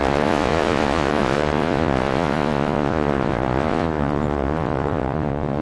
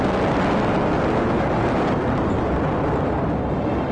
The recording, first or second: second